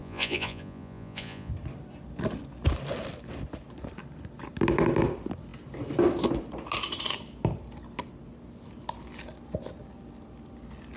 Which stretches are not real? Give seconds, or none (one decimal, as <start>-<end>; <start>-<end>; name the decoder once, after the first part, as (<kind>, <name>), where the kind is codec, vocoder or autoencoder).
0.0-1.5 (vocoder, Vocos)